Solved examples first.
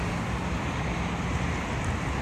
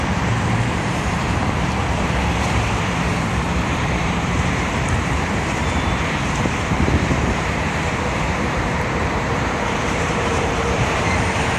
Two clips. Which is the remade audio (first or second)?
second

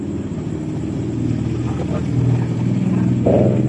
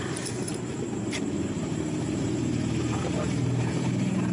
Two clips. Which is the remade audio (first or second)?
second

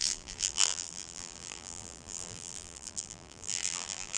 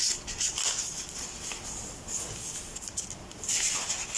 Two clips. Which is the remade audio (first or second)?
first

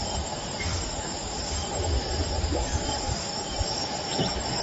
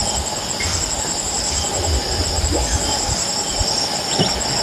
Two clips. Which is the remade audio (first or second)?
first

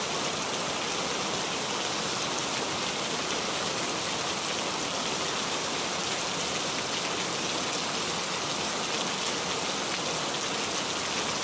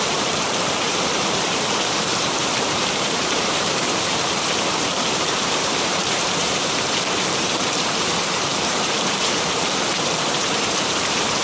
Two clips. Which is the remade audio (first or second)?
second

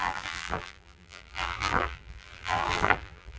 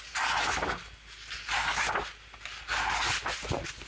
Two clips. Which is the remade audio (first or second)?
first